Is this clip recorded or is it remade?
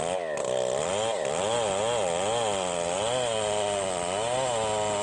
recorded